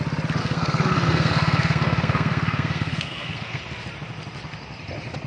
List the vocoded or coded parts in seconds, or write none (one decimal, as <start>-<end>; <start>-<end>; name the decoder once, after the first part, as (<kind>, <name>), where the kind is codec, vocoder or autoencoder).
0.4-3.6 (codec, SNAC)